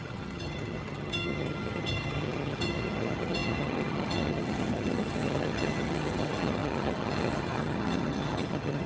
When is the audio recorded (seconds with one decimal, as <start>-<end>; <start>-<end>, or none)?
none